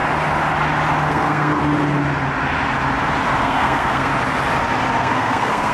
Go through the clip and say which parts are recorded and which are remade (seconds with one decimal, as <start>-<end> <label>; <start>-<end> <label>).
0.0-1.1 recorded; 1.1-1.5 remade; 1.5-3.4 recorded; 3.4-4.1 remade; 4.1-5.0 recorded; 5.0-5.7 remade